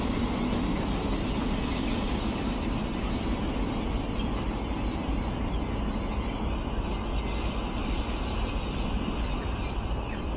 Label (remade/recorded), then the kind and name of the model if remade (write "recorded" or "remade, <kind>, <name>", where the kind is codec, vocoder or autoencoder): recorded